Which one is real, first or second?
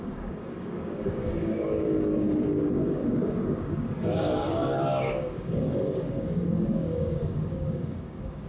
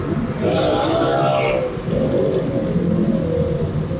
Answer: second